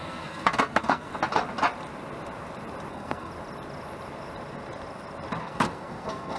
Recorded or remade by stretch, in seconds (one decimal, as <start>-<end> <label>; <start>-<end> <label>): 0.0-1.1 remade; 1.1-2.9 recorded; 2.9-3.3 remade; 3.3-5.4 recorded; 5.4-6.4 remade